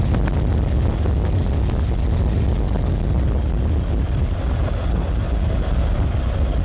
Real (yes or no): yes